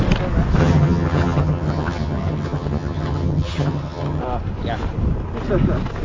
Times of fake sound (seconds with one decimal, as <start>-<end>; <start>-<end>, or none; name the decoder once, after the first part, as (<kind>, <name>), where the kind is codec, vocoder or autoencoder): 0.6-4.2 (vocoder, HiFi-GAN)